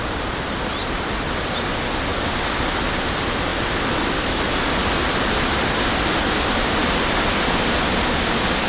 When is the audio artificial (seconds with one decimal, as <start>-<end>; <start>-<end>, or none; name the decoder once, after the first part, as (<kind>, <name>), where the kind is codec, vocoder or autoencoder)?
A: none